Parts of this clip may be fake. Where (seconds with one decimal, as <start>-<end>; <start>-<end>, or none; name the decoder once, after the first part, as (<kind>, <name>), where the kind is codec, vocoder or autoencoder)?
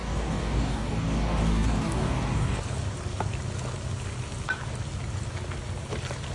0.0-2.6 (codec, DAC)